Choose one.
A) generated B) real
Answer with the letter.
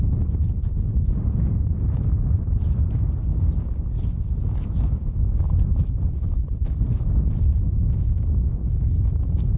B